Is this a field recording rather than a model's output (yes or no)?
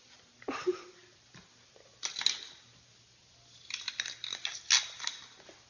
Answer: yes